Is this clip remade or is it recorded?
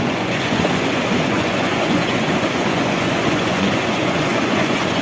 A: remade